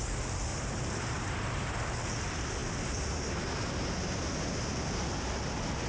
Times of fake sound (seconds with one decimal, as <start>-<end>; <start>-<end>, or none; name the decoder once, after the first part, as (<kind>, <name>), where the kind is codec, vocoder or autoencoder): 0.5-1.3 (vocoder, BigVGAN v2)